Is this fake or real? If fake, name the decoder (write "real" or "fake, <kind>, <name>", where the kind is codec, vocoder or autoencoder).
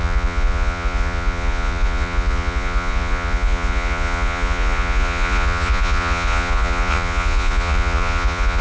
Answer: fake, vocoder, Vocos